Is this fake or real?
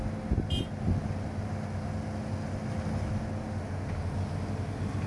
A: real